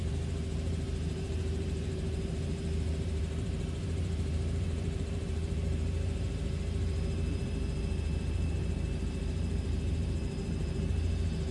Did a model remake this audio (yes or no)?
yes